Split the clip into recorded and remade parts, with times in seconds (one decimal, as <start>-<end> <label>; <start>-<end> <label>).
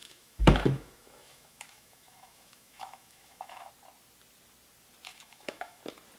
0.0-3.7 remade; 3.7-5.1 recorded; 5.1-5.8 remade; 5.8-6.2 recorded